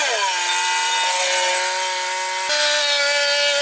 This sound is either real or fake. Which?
real